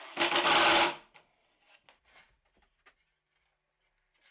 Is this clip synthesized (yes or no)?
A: no